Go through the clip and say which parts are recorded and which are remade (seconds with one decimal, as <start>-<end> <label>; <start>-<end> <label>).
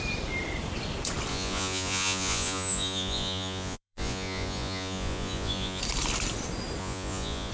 0.0-1.3 recorded; 1.3-5.8 remade; 5.8-6.8 recorded; 6.8-7.5 remade